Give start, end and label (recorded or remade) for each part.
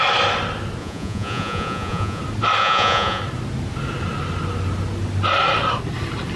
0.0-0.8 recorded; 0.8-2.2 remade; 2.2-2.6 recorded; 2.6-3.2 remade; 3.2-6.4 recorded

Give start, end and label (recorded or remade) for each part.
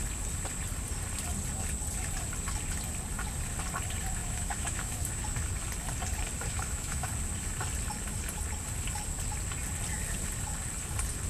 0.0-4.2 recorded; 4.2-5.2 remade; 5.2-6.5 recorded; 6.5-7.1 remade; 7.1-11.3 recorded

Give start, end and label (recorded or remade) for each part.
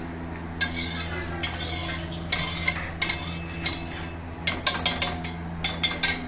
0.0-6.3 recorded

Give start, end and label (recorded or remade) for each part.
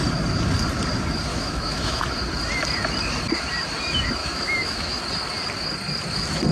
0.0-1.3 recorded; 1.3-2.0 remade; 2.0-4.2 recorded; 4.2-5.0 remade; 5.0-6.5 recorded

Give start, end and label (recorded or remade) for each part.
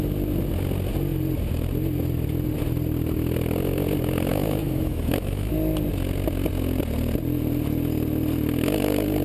0.0-4.3 recorded; 4.3-5.5 remade; 5.5-9.2 recorded